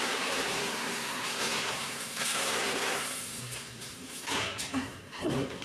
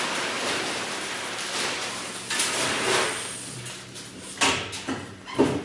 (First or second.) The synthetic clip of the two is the first